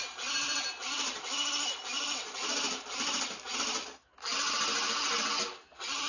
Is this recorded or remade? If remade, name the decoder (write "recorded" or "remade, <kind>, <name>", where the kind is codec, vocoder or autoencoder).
recorded